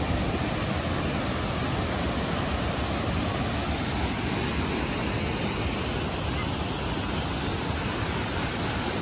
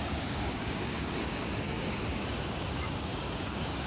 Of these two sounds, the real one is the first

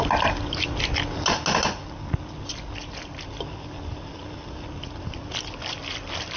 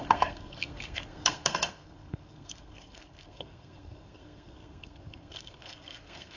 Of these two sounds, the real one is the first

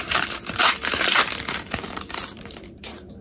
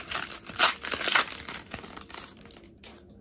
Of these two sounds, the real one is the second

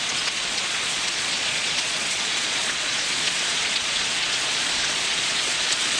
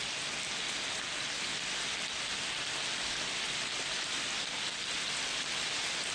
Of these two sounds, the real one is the second